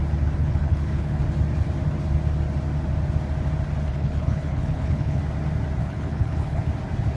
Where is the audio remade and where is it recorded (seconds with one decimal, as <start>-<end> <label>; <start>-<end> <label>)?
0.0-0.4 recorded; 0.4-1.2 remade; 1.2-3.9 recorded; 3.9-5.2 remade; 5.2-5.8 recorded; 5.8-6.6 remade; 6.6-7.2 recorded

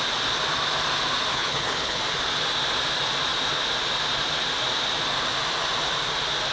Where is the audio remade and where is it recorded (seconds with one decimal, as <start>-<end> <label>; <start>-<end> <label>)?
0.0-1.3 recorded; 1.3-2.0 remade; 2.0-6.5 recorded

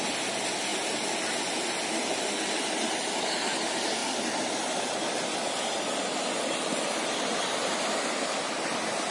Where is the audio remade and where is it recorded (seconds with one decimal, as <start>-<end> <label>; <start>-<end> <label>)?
0.0-9.1 recorded

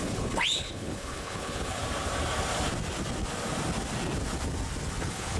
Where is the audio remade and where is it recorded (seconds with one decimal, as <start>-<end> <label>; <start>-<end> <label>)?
0.0-1.8 remade; 1.8-5.0 recorded; 5.0-5.4 remade